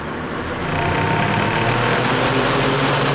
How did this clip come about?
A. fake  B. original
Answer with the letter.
B